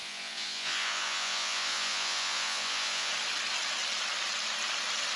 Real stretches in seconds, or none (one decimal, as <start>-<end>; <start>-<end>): 3.1-5.2